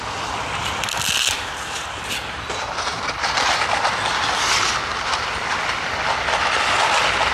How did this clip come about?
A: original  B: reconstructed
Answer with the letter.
A